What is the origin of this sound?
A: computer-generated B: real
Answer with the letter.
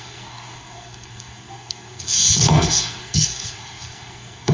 A